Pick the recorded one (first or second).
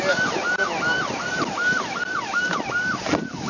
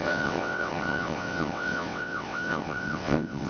first